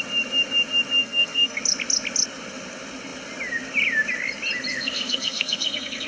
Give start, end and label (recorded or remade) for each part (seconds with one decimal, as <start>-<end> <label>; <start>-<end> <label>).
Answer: 0.0-1.0 recorded; 1.0-1.6 remade; 1.6-4.7 recorded; 4.7-6.1 remade